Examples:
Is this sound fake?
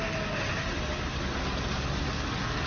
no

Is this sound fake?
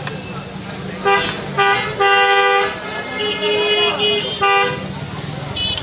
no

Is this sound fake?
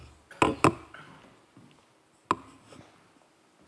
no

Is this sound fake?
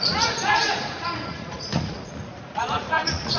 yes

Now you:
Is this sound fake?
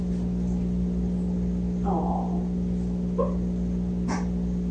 no